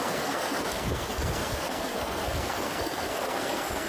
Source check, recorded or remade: remade